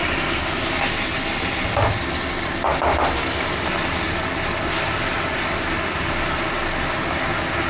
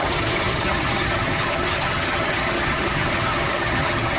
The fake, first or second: second